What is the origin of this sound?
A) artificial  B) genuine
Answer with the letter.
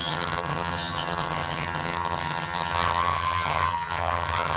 A